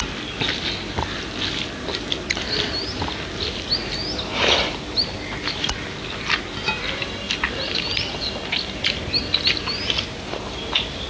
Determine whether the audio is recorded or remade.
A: recorded